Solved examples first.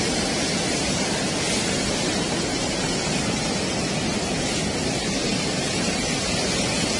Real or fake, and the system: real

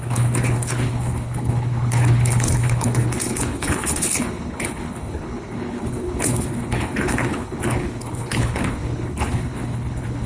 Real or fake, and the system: fake, codec, HILCodec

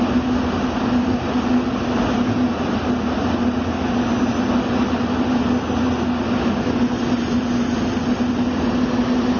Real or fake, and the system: real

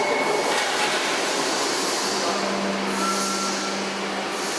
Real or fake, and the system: real